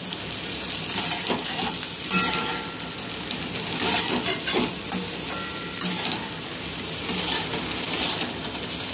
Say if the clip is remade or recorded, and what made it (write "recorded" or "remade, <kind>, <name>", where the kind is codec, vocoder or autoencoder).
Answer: recorded